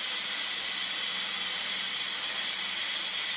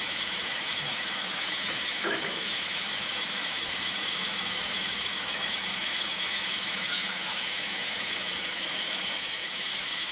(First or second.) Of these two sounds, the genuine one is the first